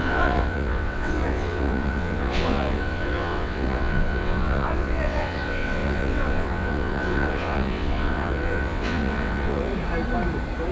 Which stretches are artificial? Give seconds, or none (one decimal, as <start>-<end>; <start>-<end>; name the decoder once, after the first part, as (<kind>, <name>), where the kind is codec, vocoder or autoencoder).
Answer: 0.0-9.7 (vocoder, WaveNeXt)